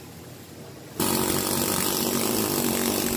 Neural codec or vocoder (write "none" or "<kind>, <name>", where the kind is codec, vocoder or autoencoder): none